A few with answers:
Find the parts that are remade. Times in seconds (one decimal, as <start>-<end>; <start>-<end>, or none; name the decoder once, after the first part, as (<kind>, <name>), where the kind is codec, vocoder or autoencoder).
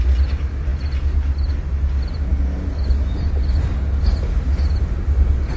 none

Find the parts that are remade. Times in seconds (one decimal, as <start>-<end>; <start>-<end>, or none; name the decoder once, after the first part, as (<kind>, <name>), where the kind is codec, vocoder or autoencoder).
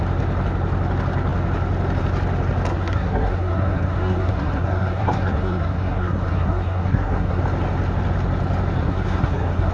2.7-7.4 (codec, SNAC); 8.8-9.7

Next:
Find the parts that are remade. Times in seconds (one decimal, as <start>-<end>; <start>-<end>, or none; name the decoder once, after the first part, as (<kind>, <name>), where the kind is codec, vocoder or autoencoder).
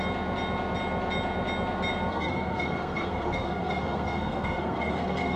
2.1-5.4 (codec, SNAC)